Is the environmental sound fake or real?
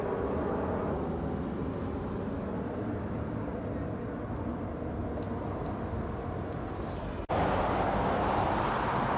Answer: real